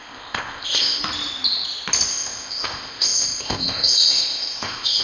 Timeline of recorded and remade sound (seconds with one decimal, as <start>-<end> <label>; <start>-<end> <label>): 0.0-1.0 remade; 1.0-2.1 recorded; 2.1-5.0 remade